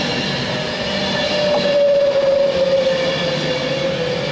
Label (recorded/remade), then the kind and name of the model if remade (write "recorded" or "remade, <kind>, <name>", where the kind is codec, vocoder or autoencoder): recorded